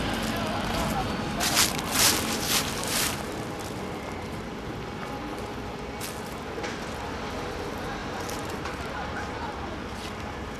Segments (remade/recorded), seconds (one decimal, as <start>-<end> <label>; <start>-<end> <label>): 0.0-8.0 recorded; 8.0-9.3 remade; 9.3-10.6 recorded